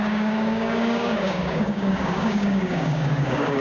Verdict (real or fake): fake